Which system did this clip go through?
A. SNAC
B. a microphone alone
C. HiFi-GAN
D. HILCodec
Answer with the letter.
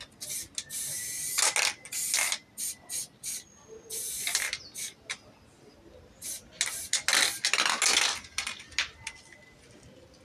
B